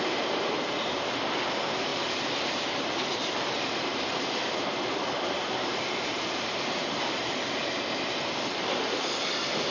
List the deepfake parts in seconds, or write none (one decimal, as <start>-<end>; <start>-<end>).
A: 0.0-9.7